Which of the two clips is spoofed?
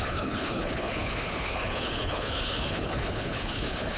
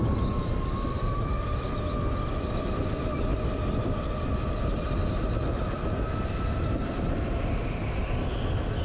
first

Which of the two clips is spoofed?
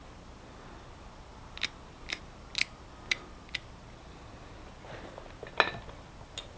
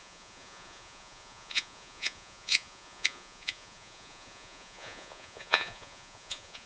second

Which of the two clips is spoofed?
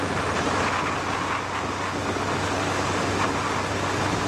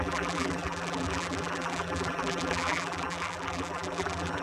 second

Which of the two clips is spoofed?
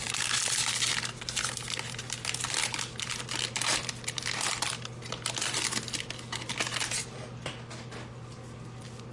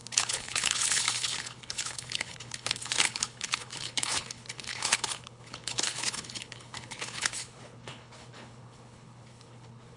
second